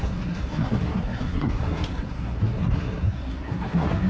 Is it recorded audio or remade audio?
remade